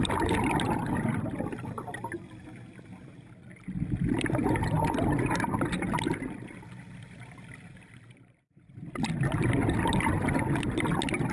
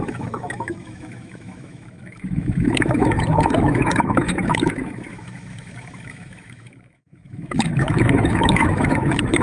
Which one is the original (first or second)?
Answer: first